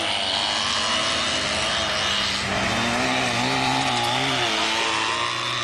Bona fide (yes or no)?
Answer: yes